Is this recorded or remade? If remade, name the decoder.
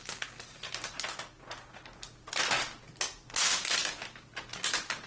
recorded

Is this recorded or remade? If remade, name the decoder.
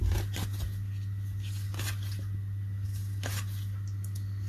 recorded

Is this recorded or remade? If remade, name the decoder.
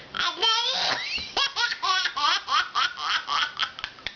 remade, vocoder, BigVGAN v2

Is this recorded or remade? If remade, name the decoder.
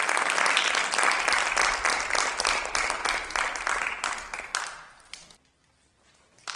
recorded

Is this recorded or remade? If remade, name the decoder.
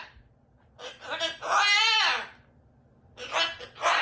recorded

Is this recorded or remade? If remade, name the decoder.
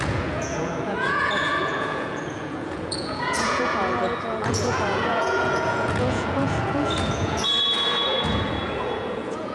remade, vocoder, Vocos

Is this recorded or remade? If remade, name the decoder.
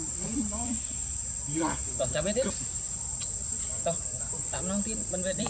remade, vocoder, BigVGAN v2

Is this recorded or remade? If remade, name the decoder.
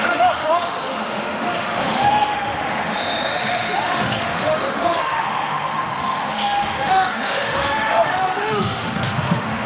remade, autoencoder, DAC-VAE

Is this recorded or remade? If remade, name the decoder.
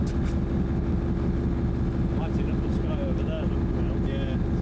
recorded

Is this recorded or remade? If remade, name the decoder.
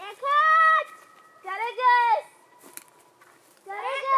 recorded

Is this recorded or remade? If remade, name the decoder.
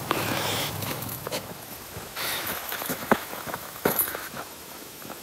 remade, autoencoder, DAC-VAE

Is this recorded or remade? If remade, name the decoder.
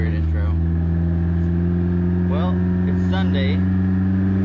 recorded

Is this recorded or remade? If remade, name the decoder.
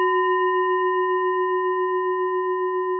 recorded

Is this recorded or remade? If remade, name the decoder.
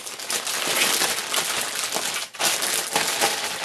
recorded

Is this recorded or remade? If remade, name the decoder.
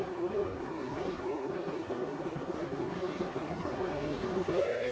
remade, codec, SNAC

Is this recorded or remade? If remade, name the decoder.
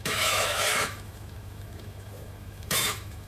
remade, autoencoder, DAC-VAE